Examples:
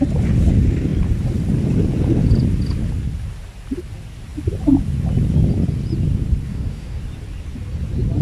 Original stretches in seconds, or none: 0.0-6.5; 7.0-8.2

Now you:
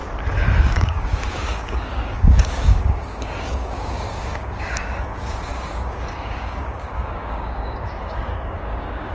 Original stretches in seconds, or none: 0.0-0.6